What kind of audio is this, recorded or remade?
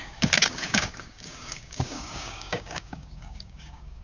remade